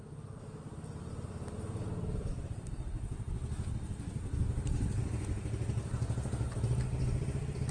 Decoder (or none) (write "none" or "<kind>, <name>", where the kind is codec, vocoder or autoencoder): vocoder, BigVGAN v2